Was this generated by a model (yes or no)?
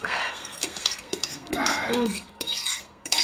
yes